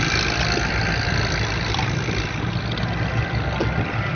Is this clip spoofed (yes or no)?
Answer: no